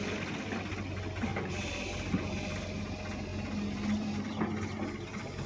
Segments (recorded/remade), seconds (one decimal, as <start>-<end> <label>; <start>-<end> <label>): 0.0-5.5 recorded